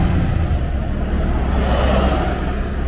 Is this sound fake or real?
real